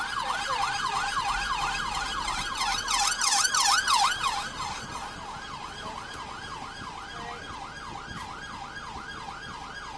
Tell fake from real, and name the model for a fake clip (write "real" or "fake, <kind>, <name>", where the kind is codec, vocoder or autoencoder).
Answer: real